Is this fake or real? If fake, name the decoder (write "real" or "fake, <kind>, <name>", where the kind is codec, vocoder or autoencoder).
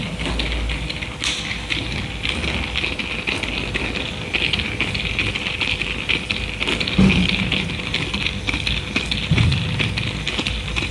real